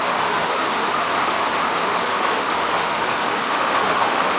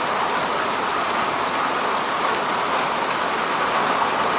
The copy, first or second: first